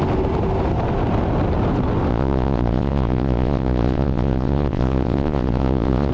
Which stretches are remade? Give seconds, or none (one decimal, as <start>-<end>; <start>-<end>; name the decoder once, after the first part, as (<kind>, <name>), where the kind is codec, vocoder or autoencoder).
2.1-6.1 (vocoder, Vocos)